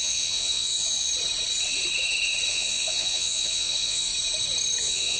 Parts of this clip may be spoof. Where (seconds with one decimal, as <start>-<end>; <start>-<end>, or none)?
0.0-1.1; 2.5-4.1; 4.8-5.2